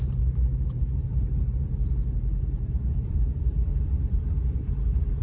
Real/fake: fake